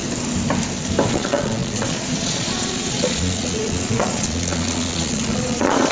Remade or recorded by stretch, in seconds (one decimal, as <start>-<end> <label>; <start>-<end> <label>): 0.0-1.1 recorded; 1.1-5.9 remade